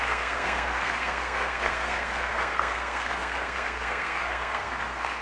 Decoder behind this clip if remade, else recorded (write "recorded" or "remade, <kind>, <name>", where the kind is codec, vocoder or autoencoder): remade, codec, SNAC